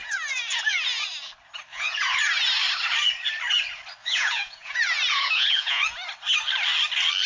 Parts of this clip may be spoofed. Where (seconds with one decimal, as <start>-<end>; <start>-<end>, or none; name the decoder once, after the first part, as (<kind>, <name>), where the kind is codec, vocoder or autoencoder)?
0.0-1.1 (vocoder, Vocos); 1.7-2.2; 4.0-5.9